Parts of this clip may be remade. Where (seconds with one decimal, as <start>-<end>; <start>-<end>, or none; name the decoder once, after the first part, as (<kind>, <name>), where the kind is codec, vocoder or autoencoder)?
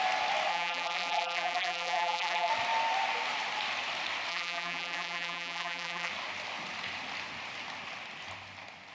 0.5-2.5 (vocoder, BigVGAN v2); 4.3-6.1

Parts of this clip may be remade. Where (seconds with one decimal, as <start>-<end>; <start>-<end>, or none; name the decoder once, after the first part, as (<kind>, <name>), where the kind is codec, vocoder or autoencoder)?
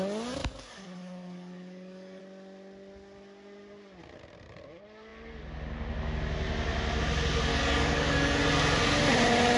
0.4-2.2 (codec, DAC); 7.5-8.4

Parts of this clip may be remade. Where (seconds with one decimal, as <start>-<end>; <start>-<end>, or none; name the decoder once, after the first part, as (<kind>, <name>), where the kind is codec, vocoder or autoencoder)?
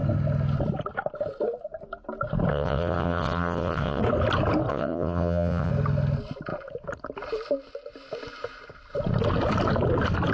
2.5-4.0 (vocoder, WaveNeXt); 4.7-5.7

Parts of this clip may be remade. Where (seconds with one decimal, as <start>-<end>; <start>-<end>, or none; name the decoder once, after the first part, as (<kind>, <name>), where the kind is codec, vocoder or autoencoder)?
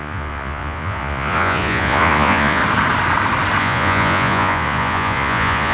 0.0-2.6 (vocoder, Vocos); 3.6-5.7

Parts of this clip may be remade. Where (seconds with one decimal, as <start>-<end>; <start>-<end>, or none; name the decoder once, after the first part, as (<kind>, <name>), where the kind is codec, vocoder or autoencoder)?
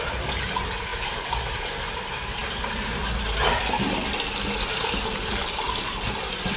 none